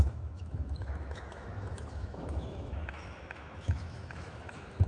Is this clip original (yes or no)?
no